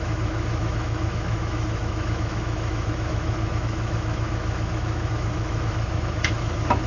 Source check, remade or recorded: remade